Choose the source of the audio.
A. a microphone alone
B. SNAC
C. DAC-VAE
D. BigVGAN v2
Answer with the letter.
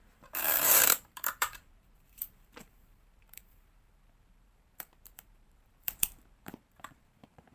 D